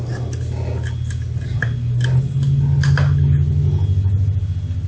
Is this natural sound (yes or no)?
yes